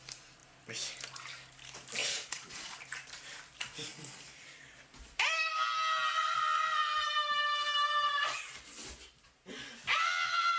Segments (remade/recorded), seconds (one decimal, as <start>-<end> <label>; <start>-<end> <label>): 0.0-2.0 recorded; 2.0-2.8 remade; 2.8-10.6 recorded